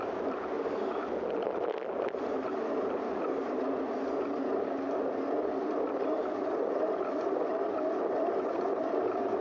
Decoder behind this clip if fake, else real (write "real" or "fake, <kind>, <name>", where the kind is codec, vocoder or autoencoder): real